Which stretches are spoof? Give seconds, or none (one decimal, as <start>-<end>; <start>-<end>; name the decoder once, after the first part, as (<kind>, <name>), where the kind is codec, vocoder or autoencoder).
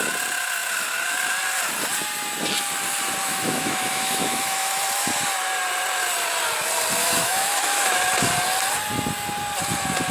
3.2-4.8 (autoencoder, DAC-VAE); 7.0-8.0